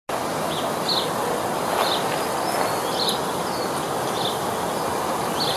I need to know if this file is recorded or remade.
recorded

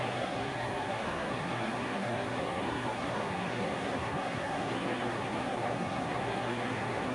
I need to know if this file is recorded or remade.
remade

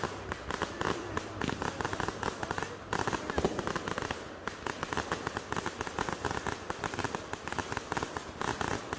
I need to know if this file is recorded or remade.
recorded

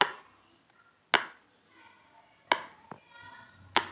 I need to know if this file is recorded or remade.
recorded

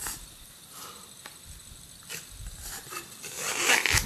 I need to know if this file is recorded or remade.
recorded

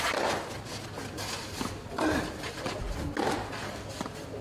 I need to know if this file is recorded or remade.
recorded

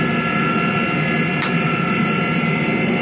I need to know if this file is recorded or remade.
recorded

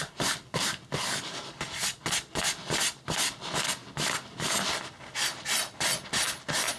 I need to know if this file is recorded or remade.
recorded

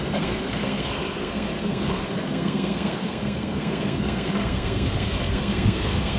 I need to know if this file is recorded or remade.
remade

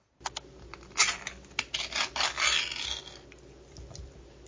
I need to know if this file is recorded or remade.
recorded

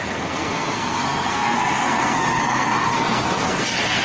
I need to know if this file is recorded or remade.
remade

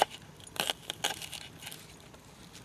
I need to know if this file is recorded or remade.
recorded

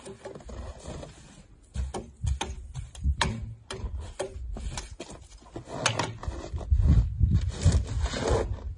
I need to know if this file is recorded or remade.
recorded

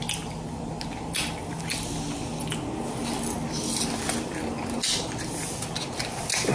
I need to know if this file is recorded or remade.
recorded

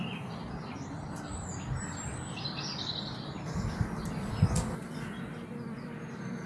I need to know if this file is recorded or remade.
recorded